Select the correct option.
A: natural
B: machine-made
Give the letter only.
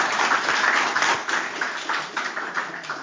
A